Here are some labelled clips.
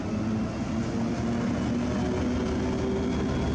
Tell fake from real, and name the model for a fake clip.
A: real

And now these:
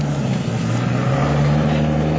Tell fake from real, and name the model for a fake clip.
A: real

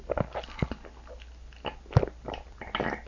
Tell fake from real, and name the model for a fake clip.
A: real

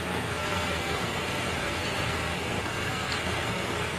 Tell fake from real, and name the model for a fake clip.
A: fake, codec, SNAC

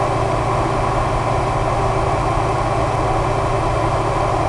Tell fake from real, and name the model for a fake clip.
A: real